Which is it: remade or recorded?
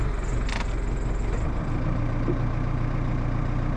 recorded